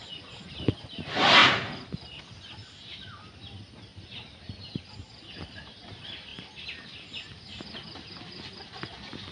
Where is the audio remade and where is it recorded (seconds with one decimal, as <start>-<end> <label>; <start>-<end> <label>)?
0.0-9.3 recorded